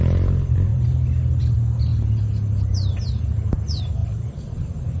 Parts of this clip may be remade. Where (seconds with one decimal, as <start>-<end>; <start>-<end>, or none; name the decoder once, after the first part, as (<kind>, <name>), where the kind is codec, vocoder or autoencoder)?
none